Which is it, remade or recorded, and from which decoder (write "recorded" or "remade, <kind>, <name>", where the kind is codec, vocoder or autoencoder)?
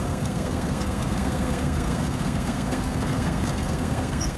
remade, codec, SNAC